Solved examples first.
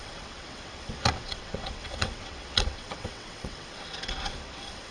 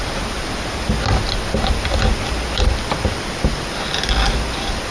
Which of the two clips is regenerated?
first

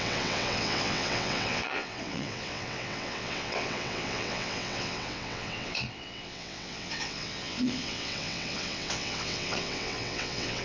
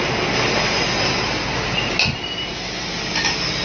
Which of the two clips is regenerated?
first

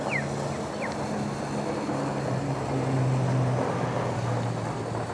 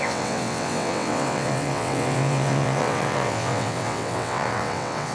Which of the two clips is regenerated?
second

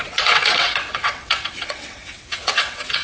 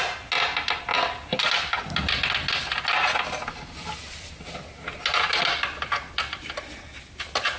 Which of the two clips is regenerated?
first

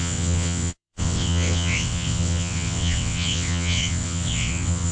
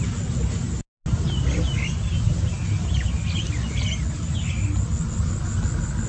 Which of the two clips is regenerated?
first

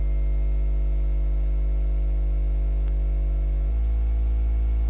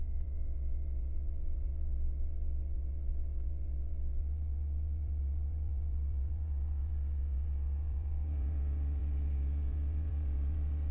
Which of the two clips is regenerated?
second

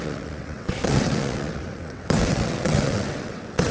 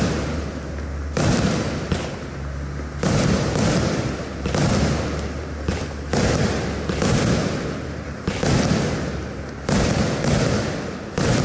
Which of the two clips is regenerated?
first